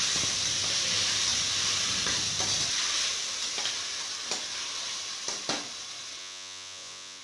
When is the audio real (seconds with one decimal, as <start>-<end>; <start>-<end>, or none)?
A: 0.0-6.2